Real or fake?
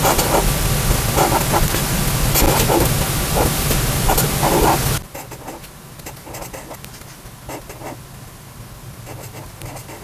real